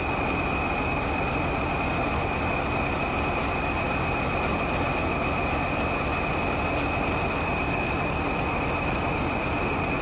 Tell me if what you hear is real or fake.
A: real